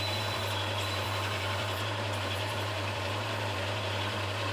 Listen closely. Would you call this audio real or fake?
fake